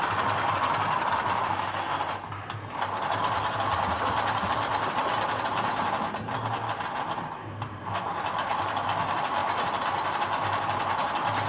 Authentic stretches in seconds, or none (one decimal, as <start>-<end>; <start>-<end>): 0.0-11.5